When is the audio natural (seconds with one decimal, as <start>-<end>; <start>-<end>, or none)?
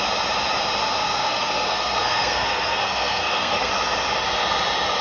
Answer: 0.0-1.0; 3.7-5.0